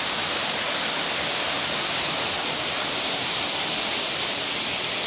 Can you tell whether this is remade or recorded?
recorded